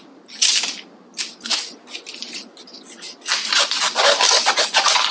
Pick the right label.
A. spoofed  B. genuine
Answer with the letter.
B